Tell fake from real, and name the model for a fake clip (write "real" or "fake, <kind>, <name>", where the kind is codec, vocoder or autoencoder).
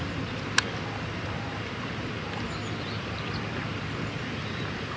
fake, vocoder, BigVGAN v2